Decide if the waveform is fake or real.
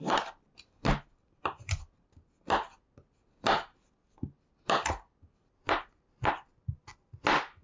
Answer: real